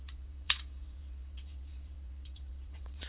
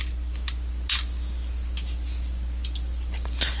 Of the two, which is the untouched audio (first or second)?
second